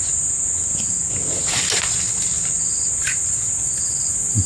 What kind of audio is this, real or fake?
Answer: real